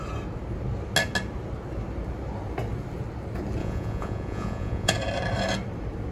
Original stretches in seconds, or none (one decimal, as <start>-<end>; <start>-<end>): 0.0-3.6; 4.9-6.1